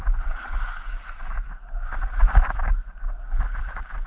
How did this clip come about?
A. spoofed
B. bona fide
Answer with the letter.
B